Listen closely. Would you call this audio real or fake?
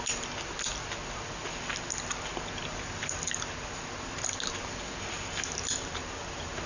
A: real